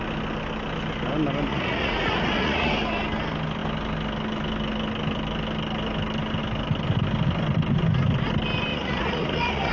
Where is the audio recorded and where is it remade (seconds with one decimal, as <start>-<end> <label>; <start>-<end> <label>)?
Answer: 0.0-1.5 recorded; 1.5-2.7 remade; 2.7-8.7 recorded; 8.7-9.7 remade